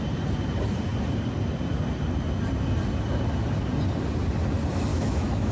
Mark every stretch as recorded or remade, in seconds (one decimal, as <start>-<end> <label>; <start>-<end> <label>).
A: 0.0-4.9 recorded; 4.9-5.5 remade